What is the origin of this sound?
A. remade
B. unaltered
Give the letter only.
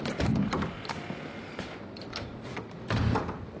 B